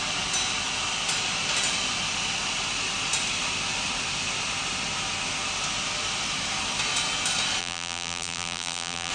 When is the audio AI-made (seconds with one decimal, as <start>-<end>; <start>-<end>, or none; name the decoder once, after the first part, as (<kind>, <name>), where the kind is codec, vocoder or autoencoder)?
7.6-9.1 (vocoder, BigVGAN v2)